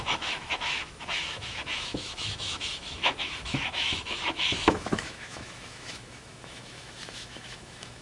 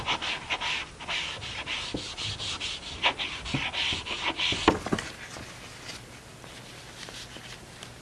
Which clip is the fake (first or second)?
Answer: first